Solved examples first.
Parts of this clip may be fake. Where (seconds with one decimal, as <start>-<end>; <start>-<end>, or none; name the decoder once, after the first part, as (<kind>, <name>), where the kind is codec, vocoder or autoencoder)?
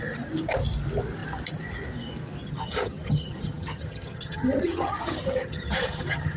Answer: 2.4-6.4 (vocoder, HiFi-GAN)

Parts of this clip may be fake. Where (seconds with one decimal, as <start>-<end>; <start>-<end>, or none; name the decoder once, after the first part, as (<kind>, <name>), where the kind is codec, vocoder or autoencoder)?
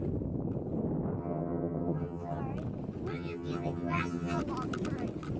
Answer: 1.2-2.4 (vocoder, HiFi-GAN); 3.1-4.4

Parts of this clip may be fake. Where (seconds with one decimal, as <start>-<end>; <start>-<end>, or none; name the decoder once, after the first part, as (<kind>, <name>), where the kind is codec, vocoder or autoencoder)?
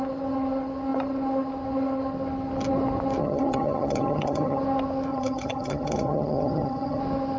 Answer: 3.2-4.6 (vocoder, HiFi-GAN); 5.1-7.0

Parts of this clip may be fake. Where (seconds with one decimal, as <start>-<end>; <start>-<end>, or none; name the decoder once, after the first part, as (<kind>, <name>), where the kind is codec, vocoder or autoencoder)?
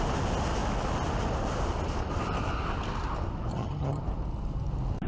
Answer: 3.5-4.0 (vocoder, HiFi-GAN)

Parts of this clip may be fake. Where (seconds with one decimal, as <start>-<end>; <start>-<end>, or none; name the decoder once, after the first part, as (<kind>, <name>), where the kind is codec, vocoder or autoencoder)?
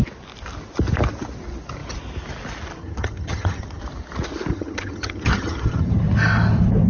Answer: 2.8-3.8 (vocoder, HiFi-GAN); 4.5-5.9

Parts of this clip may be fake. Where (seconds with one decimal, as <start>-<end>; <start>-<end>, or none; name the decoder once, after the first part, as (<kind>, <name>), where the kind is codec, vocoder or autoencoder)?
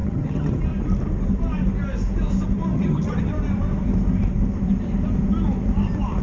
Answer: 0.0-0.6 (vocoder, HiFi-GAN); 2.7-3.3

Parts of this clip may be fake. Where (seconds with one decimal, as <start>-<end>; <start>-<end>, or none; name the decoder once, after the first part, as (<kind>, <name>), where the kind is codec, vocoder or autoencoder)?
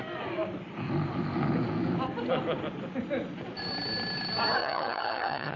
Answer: 4.6-5.6 (vocoder, HiFi-GAN)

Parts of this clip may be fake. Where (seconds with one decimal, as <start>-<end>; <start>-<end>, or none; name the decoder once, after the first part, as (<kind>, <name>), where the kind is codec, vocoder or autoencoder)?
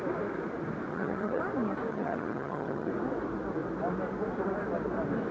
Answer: 0.9-1.4 (vocoder, HiFi-GAN); 1.9-2.9